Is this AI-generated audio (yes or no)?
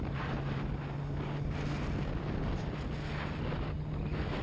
no